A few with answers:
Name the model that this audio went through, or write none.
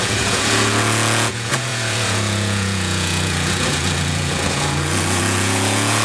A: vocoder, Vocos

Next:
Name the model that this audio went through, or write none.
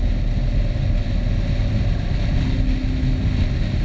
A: none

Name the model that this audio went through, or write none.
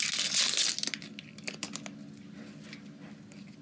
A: none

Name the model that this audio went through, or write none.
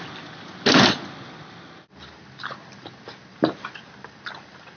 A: none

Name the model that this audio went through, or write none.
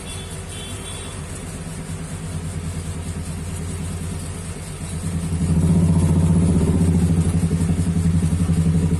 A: none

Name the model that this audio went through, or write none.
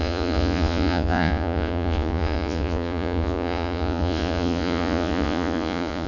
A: vocoder, Vocos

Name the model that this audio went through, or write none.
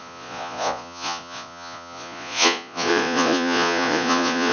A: vocoder, Vocos